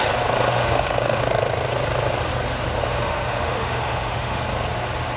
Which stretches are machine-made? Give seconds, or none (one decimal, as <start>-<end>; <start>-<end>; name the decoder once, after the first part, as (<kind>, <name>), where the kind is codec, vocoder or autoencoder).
0.5-1.2 (autoencoder, DAC-VAE); 2.8-4.4

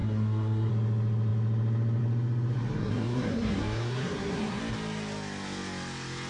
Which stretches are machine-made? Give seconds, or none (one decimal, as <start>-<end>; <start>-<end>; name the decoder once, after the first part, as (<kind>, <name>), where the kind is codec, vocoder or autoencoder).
0.0-0.7 (codec, SNAC); 2.8-4.6